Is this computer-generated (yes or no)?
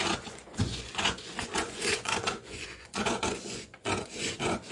yes